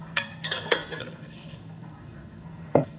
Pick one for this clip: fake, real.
fake